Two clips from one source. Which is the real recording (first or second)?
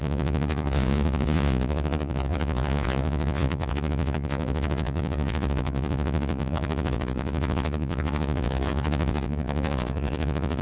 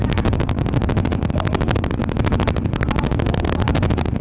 second